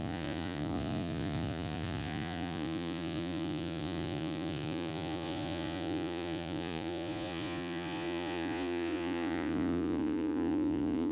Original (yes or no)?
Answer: no